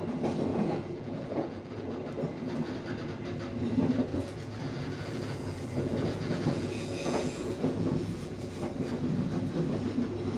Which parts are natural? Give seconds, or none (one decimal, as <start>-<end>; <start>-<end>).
0.0-0.5; 2.0-4.1; 8.5-10.4

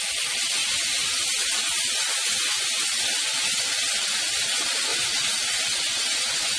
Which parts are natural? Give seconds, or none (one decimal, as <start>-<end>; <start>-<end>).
0.6-1.8; 4.9-5.5

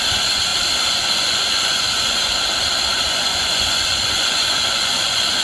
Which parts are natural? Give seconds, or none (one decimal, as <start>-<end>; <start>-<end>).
0.5-1.0; 2.3-3.0

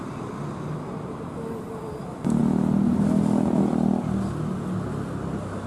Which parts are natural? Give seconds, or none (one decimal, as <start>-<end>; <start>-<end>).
0.0-5.7

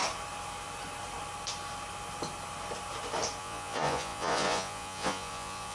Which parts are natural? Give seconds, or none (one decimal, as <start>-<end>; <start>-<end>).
0.0-3.4

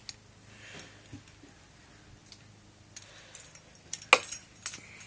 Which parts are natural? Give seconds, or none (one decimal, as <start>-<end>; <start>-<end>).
0.0-5.1